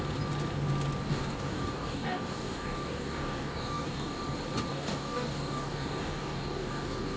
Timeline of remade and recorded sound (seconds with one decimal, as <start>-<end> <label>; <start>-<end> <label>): 0.0-1.1 recorded; 1.1-4.2 remade; 4.2-4.7 recorded; 4.7-7.2 remade